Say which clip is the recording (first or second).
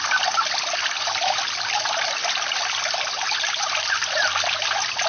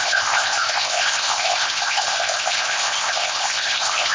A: first